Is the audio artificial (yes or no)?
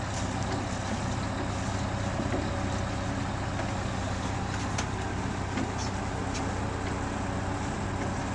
no